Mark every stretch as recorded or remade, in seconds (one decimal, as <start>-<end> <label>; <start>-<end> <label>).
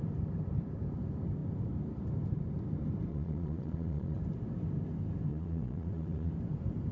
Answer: 0.0-3.1 recorded; 3.1-4.2 remade; 4.2-5.3 recorded; 5.3-6.3 remade; 6.3-6.9 recorded